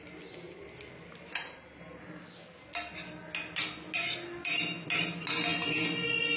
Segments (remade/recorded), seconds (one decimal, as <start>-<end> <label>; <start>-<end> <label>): 0.0-6.4 recorded